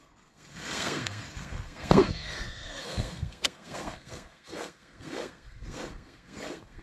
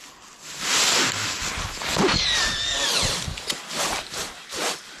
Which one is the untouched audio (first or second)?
second